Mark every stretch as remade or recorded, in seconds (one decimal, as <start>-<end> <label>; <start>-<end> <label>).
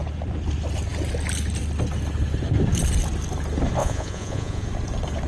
0.0-3.8 recorded; 3.8-4.6 remade; 4.6-5.3 recorded